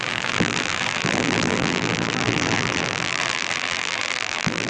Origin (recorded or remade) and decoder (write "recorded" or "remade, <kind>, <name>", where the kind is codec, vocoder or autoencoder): remade, vocoder, BigVGAN v2